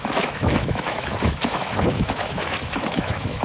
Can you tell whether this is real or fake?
fake